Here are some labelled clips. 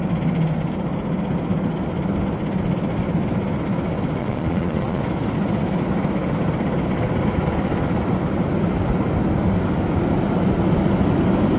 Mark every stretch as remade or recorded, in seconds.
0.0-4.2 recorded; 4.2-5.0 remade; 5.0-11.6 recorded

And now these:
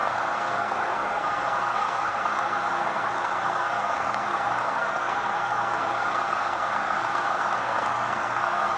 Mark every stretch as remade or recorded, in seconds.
0.0-8.8 remade

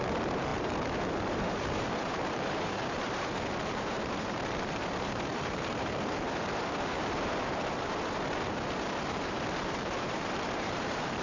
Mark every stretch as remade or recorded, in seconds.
0.0-11.2 remade

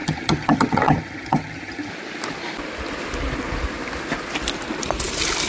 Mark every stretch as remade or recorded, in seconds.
0.0-1.9 remade; 1.9-5.5 recorded

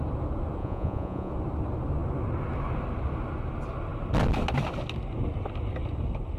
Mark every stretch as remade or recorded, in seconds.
0.0-0.6 recorded; 0.6-1.3 remade; 1.3-6.4 recorded

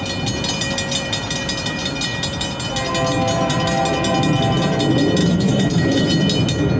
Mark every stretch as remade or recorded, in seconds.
0.0-5.2 recorded; 5.2-6.1 remade; 6.1-6.8 recorded

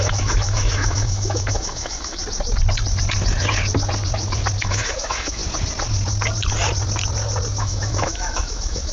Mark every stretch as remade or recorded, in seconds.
0.0-2.2 remade; 2.2-4.6 recorded; 4.6-5.4 remade; 5.4-7.6 recorded; 7.6-8.9 remade

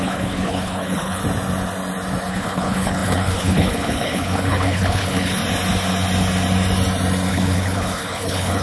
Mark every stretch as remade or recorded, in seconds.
0.0-1.2 remade; 1.2-2.3 recorded; 2.3-5.4 remade; 5.4-7.3 recorded; 7.3-8.6 remade